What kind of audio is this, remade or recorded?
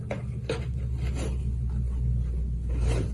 recorded